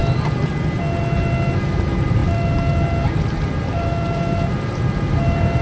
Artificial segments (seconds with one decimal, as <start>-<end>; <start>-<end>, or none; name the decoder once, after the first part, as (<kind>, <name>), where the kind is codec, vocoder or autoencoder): none